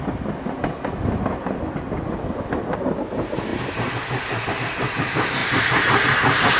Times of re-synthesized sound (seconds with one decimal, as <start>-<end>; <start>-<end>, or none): none